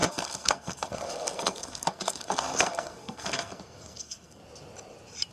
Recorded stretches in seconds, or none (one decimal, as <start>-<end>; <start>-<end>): 4.4-5.3